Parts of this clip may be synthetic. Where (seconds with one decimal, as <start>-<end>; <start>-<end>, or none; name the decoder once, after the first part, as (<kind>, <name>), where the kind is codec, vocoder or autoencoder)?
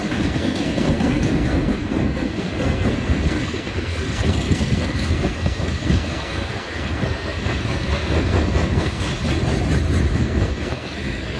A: 0.0-9.1 (codec, SNAC); 10.1-11.4